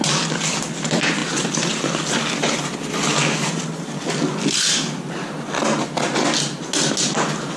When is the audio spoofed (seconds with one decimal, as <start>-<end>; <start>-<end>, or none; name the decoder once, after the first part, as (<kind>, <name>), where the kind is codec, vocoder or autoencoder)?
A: none